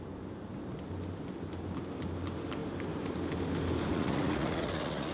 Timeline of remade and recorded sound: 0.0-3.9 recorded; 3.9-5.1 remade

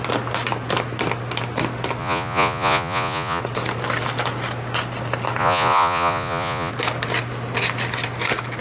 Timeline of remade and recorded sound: 0.0-2.0 recorded; 2.0-3.4 remade; 3.4-5.4 recorded; 5.4-6.7 remade; 6.7-8.6 recorded

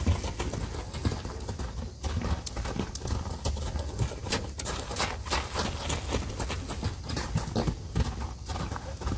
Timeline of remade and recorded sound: 0.0-9.2 recorded

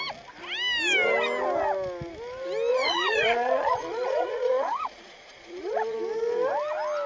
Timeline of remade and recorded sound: 0.0-2.7 recorded; 2.7-6.0 remade; 6.0-7.1 recorded

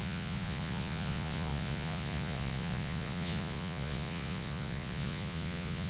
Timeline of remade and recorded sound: 0.0-5.9 remade

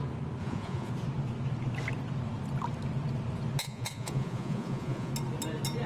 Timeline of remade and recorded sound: 0.0-0.4 recorded; 0.4-0.9 remade; 0.9-3.6 recorded; 3.6-5.1 remade; 5.1-5.9 recorded

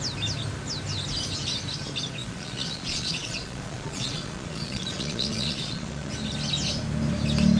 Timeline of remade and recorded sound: 0.0-2.2 recorded; 2.2-6.1 remade; 6.1-7.6 recorded

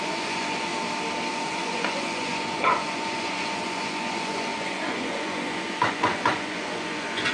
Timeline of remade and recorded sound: 0.0-0.7 remade; 0.7-1.3 recorded; 1.3-7.3 remade